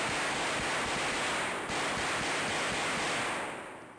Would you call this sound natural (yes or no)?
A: yes